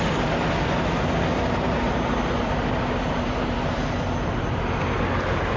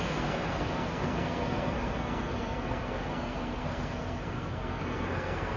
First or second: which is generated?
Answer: second